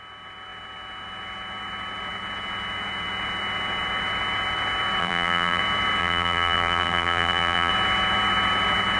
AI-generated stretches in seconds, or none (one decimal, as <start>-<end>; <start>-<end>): 5.0-5.6; 6.0-7.7

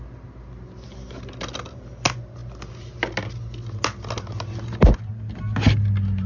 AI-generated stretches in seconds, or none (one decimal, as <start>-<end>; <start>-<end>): none

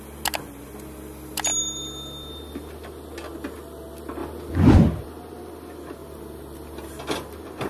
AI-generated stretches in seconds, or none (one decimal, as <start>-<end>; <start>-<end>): 6.0-7.0

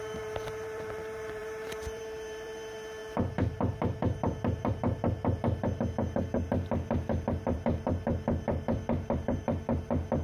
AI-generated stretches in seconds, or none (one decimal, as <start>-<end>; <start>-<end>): 0.0-10.2

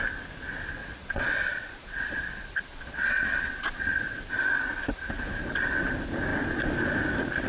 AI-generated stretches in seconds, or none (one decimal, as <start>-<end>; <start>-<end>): 0.8-4.0

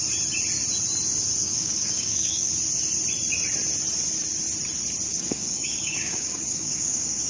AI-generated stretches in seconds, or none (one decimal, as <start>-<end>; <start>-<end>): 1.4-2.5; 5.1-7.3